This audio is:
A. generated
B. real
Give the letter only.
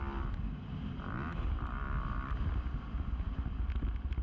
B